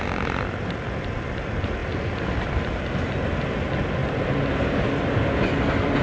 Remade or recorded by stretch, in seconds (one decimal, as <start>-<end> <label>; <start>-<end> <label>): 0.0-6.0 recorded